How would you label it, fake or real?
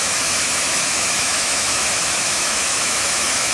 fake